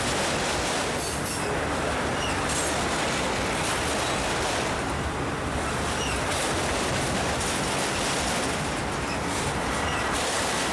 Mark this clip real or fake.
real